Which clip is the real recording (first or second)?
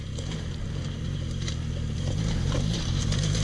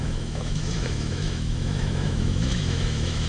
first